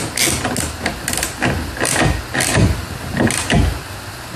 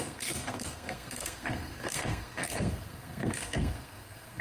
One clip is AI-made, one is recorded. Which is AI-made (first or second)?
second